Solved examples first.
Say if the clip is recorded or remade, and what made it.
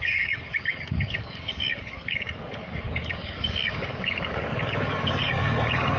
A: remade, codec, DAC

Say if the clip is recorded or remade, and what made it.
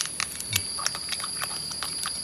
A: recorded